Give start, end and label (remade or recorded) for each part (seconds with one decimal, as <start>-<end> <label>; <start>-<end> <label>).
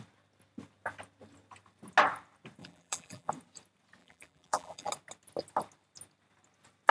0.0-2.6 recorded; 2.6-3.3 remade; 3.3-4.0 recorded; 4.0-4.9 remade; 4.9-6.9 recorded